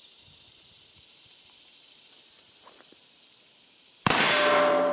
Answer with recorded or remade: remade